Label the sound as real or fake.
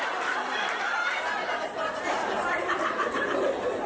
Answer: fake